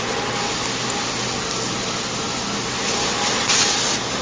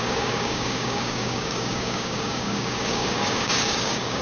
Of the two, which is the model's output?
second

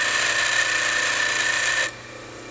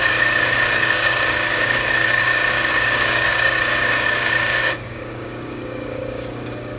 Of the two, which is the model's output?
second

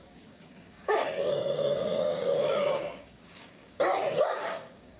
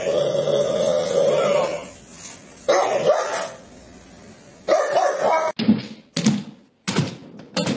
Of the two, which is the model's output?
first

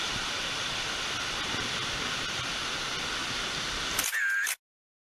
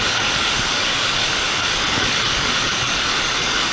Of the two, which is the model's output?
second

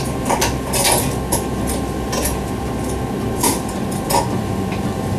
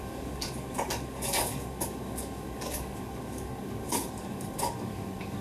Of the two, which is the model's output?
second